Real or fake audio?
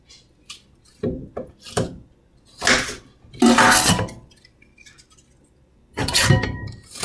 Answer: real